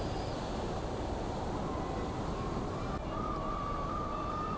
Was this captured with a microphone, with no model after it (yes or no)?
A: yes